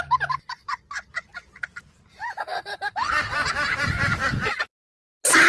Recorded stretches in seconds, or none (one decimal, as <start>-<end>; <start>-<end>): 0.0-1.3; 4.6-5.5